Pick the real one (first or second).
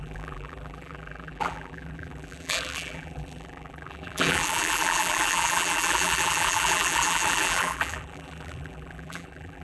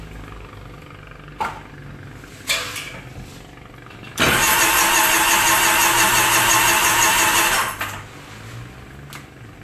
second